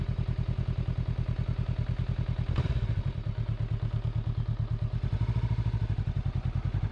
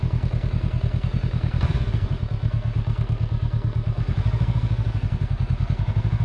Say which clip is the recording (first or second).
first